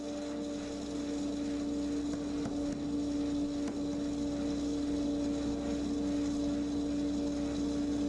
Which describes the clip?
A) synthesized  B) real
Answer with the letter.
B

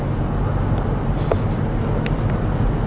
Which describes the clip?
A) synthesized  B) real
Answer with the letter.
B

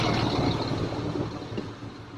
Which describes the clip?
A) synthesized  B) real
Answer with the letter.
B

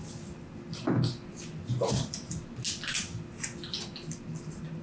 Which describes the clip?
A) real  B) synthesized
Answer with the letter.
A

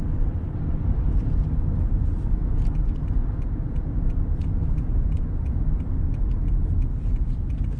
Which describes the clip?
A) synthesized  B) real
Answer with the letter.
B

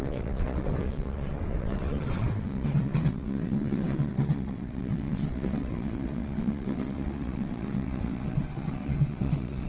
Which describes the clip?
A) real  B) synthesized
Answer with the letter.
B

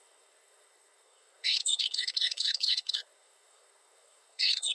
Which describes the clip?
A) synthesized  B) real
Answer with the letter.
A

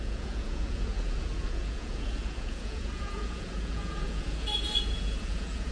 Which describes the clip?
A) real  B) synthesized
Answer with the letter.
B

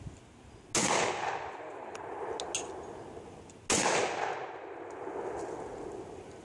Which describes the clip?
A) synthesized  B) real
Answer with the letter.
B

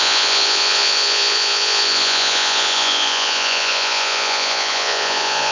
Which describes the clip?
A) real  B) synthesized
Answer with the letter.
B